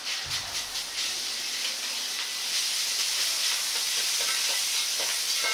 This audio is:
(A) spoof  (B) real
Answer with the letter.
B